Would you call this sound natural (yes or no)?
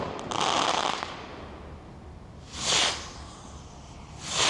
yes